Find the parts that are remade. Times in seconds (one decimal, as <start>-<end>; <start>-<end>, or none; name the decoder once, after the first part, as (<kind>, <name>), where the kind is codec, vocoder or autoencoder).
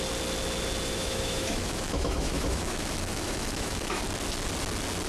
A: 0.9-4.0 (autoencoder, DAC-VAE)